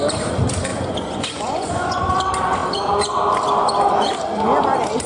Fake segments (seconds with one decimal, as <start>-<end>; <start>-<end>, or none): 0.7-2.1